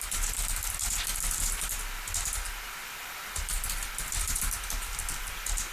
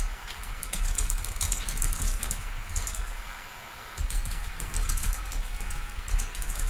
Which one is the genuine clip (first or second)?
first